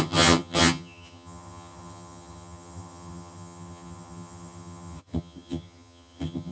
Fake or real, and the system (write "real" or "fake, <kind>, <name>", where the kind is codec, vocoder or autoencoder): fake, vocoder, HiFi-GAN